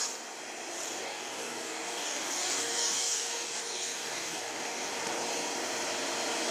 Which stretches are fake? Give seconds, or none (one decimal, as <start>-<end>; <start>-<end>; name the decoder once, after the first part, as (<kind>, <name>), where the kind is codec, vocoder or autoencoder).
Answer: 1.0-4.9 (codec, DAC)